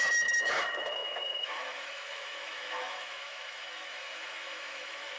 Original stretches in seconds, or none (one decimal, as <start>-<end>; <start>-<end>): none